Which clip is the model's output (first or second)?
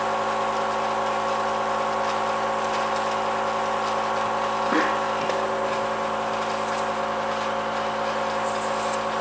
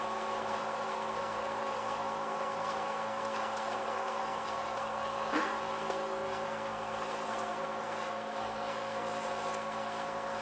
second